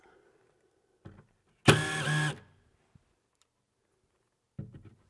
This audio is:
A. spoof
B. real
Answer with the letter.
B